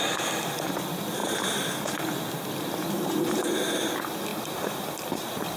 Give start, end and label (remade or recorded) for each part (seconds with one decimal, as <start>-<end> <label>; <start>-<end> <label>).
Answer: 0.0-5.6 recorded